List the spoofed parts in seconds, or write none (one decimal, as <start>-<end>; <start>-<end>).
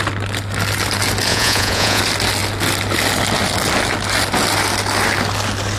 1.3-2.0